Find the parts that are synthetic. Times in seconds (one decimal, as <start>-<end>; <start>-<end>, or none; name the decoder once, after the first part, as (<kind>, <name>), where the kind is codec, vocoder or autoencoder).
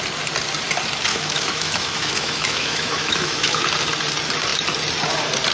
1.1-3.6 (autoencoder, DAC-VAE)